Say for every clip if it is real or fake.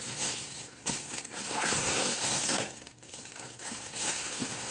fake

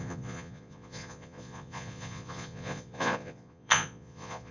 fake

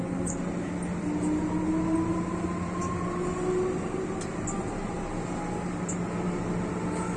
real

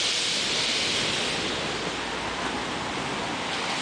real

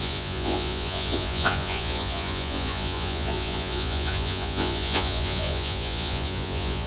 fake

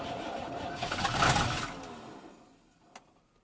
real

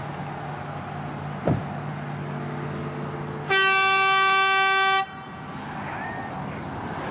real